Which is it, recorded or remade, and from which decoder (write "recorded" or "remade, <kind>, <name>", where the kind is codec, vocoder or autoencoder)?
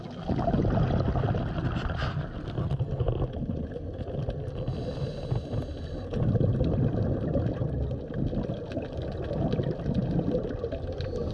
recorded